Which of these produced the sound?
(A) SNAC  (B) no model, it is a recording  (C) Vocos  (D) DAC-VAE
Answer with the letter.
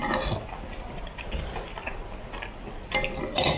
B